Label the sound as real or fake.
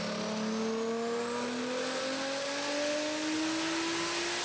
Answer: real